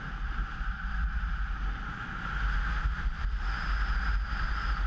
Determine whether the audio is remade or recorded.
recorded